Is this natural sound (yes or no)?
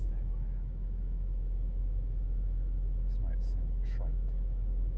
no